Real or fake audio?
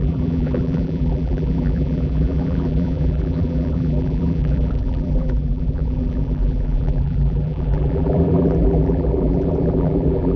fake